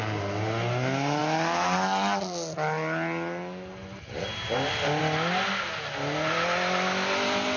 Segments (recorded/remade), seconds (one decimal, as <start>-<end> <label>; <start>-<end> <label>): 0.0-7.6 recorded